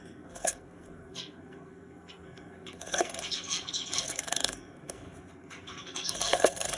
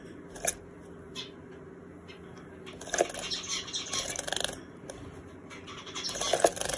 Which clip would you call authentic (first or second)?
second